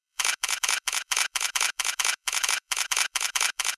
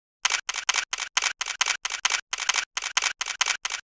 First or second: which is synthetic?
first